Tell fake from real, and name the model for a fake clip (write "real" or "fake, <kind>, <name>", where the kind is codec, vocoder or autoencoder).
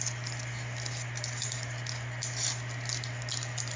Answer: real